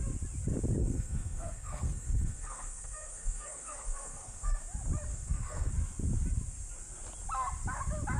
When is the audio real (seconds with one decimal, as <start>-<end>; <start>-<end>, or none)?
0.0-0.8; 4.6-5.1; 5.7-8.2